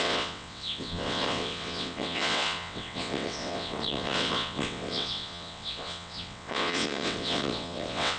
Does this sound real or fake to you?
fake